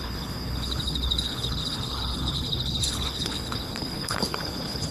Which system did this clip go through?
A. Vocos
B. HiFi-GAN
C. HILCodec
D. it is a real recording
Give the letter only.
C